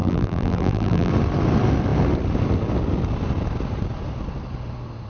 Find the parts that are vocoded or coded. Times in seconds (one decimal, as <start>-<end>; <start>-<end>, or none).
0.0-1.1